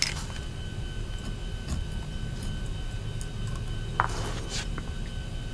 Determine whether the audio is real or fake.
real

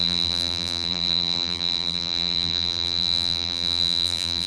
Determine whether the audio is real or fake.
fake